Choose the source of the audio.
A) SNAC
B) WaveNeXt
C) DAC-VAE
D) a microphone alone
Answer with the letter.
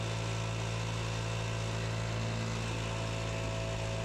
D